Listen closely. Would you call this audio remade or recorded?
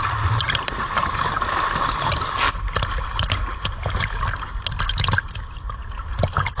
recorded